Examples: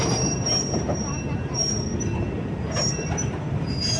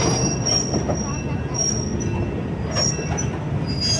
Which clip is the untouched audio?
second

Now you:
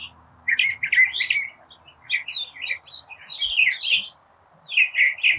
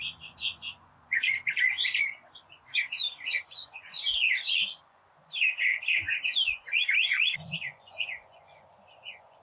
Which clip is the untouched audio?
first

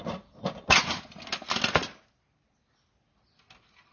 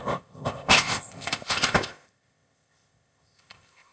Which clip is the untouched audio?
first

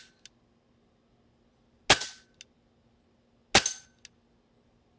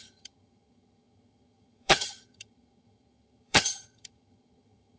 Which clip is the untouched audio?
first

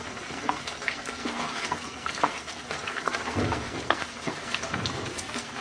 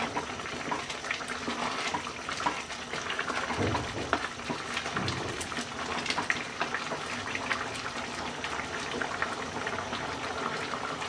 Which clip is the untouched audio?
second